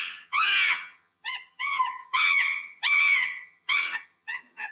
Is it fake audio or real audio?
fake